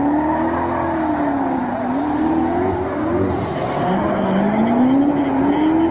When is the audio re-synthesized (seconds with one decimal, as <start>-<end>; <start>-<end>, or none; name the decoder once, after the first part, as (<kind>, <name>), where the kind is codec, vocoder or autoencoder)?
none